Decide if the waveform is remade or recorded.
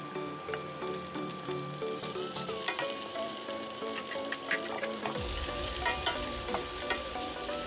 remade